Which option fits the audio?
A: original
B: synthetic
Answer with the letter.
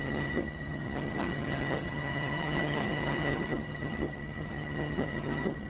B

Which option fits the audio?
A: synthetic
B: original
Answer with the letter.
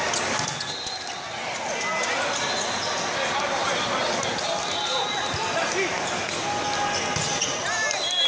B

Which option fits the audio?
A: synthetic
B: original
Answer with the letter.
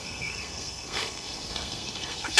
A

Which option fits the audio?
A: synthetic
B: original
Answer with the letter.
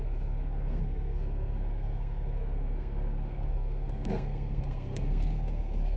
A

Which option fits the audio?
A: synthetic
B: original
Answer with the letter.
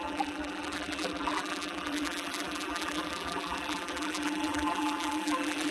A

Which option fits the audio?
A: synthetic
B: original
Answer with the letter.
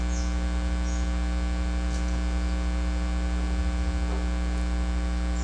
B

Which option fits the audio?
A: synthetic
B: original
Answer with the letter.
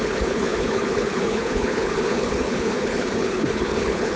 A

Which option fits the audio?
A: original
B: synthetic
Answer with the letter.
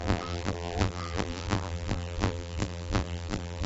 B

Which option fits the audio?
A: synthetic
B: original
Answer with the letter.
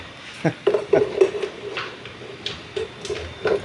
B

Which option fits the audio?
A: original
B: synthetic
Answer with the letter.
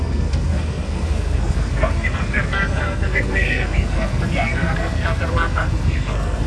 B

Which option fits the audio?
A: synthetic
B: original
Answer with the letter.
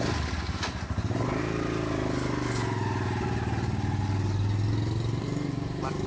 B